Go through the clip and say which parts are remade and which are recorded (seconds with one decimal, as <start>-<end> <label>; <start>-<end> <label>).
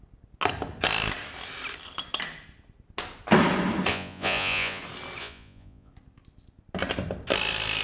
0.0-3.9 recorded; 3.9-4.8 remade; 4.8-5.2 recorded; 5.2-5.9 remade; 5.9-7.8 recorded